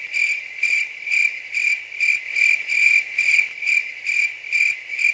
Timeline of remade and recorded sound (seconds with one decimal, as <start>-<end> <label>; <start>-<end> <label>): 0.0-5.1 recorded